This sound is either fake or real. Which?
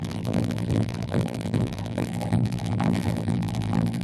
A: fake